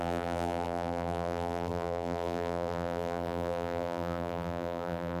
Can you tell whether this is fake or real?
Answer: fake